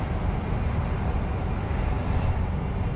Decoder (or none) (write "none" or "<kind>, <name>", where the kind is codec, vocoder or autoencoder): none